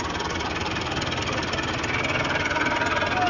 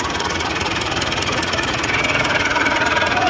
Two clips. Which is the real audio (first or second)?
first